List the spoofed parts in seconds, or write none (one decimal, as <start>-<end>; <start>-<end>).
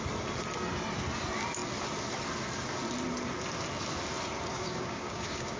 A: 4.5-5.6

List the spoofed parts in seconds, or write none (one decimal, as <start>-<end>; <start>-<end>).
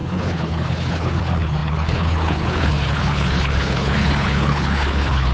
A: 0.0-5.3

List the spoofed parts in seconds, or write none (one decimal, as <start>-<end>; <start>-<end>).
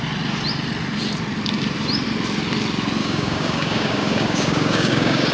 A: 3.0-5.3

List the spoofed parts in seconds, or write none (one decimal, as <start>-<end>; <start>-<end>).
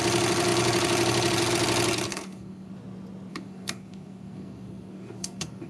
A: 2.1-2.7; 3.3-5.7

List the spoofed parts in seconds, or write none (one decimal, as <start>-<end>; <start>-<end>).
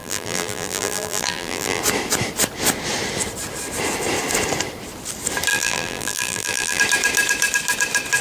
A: 0.0-1.8; 5.5-6.8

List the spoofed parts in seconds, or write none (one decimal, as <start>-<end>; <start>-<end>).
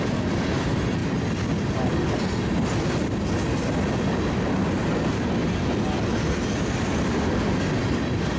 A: none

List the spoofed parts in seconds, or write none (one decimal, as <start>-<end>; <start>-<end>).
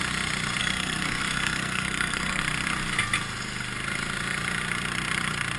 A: 0.6-2.4